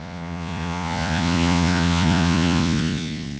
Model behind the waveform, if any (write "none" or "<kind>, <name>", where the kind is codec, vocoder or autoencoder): vocoder, Vocos